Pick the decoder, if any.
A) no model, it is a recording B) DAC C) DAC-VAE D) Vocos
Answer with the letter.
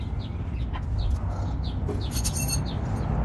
A